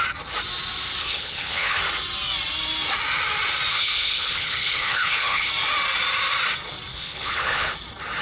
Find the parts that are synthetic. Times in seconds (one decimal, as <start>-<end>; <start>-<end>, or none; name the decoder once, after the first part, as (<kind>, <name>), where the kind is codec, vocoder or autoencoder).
1.0-1.8 (codec, HILCodec); 3.7-5.5; 6.9-7.7